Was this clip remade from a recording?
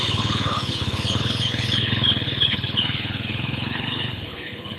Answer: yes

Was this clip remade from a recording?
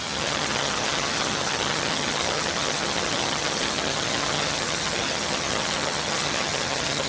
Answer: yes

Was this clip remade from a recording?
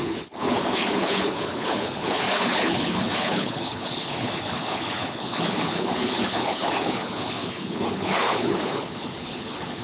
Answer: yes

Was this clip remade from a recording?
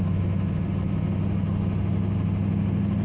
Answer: no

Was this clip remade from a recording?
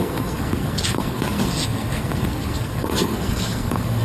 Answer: yes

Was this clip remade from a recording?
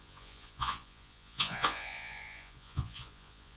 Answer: yes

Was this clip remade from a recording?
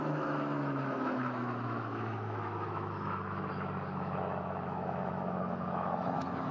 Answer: yes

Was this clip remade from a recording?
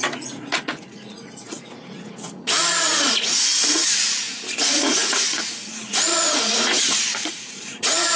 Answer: yes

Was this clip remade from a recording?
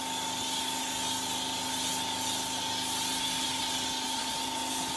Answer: no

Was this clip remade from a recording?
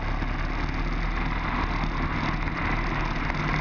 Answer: no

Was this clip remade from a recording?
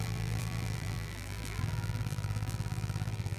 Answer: yes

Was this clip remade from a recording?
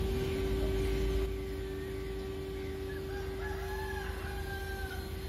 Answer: no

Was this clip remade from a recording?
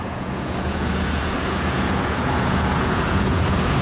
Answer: yes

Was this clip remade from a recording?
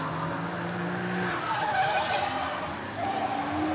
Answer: no